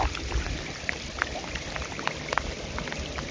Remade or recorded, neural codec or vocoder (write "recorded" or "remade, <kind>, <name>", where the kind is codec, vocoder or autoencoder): recorded